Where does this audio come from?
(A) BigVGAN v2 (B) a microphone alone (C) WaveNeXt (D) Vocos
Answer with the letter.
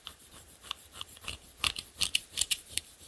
A